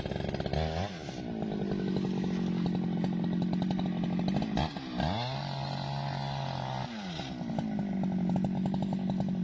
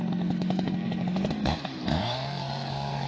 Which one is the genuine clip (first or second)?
first